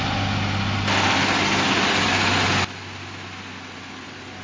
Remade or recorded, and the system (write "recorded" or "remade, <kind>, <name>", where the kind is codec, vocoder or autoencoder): recorded